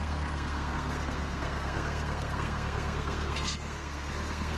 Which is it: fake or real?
fake